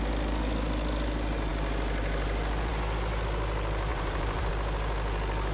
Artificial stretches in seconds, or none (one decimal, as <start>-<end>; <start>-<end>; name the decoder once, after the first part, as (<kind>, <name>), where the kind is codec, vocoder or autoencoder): 3.9-4.5 (vocoder, BigVGAN v2)